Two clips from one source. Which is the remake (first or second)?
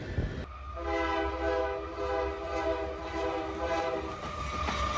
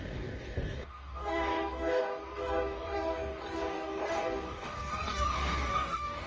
second